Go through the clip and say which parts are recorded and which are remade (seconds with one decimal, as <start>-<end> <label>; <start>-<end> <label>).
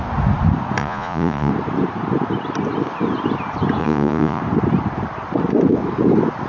0.0-0.8 recorded; 0.8-1.5 remade; 1.5-3.8 recorded; 3.8-4.4 remade; 4.4-6.5 recorded